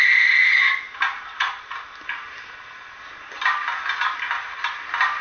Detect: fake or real real